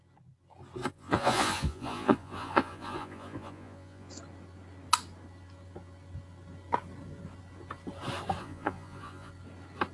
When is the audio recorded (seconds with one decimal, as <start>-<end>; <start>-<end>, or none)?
0.0-0.8; 4.1-8.4; 9.3-9.9